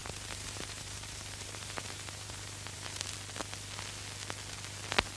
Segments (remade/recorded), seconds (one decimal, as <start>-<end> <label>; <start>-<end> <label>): 0.0-3.1 remade; 3.1-5.2 recorded